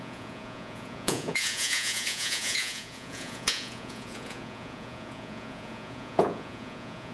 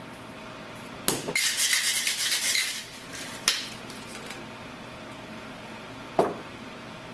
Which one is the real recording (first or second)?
second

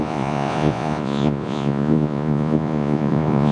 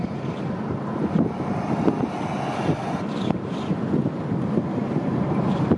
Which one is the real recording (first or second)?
second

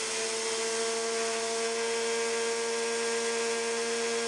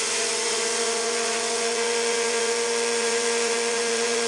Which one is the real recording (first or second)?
first